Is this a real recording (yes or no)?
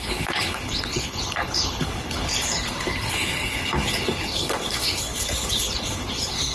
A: no